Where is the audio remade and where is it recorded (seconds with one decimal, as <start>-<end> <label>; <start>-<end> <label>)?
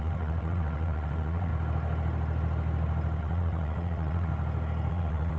0.0-1.5 remade; 1.5-3.2 recorded; 3.2-4.3 remade; 4.3-4.9 recorded; 4.9-5.4 remade